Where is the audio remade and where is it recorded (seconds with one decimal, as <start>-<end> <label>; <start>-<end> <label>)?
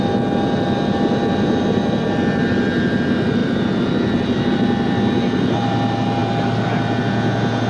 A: 0.0-7.7 recorded